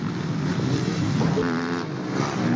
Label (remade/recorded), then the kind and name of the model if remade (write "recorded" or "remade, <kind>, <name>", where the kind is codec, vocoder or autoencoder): recorded